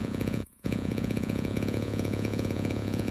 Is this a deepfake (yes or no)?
yes